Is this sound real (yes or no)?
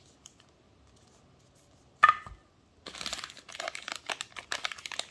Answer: yes